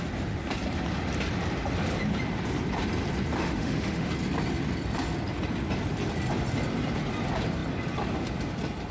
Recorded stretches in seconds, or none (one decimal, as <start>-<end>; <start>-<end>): 0.0-3.4; 4.1-8.9